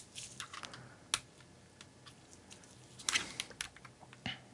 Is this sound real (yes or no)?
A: yes